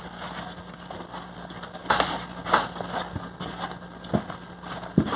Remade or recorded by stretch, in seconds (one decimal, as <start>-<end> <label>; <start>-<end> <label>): 0.0-5.2 recorded

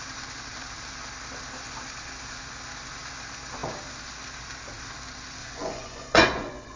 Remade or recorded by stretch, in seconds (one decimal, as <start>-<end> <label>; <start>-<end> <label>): 0.0-5.4 recorded; 5.4-6.8 remade

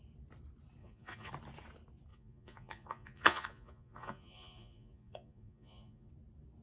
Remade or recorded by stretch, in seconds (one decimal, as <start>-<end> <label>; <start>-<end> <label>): 0.0-0.8 recorded; 0.8-1.3 remade; 1.3-2.1 recorded; 2.1-6.1 remade; 6.1-6.6 recorded

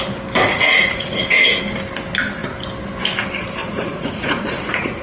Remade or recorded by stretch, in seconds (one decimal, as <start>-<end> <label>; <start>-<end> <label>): 0.0-0.4 recorded; 0.4-1.2 remade; 1.2-3.6 recorded; 3.6-5.0 remade

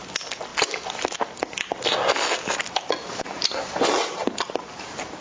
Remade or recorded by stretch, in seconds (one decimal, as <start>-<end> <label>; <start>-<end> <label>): 0.0-5.2 recorded

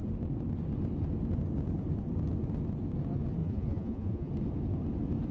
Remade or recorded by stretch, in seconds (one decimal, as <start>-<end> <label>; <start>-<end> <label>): 0.0-3.4 recorded; 3.4-4.3 remade; 4.3-5.3 recorded